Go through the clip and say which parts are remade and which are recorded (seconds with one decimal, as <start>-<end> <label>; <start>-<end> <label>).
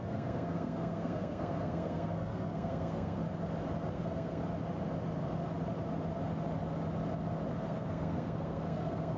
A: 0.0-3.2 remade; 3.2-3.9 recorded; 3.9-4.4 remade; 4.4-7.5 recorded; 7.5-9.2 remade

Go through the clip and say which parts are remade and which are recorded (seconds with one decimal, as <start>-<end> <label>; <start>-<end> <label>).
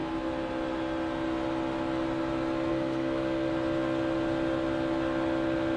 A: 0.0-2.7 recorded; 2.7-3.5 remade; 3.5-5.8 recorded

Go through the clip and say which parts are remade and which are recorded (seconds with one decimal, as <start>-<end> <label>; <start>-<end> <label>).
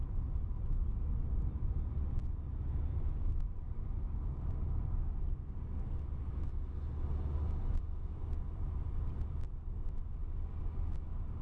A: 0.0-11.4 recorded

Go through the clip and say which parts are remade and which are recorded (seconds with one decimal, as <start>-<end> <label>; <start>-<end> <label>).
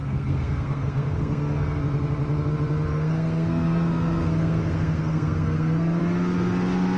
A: 0.0-1.8 remade; 1.8-2.9 recorded; 2.9-6.0 remade; 6.0-7.0 recorded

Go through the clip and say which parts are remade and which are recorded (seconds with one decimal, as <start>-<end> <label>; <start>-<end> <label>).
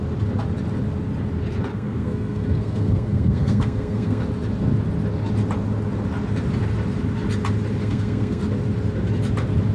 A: 0.0-1.7 recorded; 1.7-4.2 remade; 4.2-7.8 recorded; 7.8-8.4 remade; 8.4-9.7 recorded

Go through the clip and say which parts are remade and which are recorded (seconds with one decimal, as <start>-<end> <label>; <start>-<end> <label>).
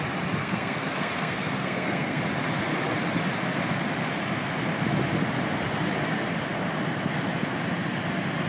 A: 0.0-0.4 recorded; 0.4-2.2 remade; 2.2-8.5 recorded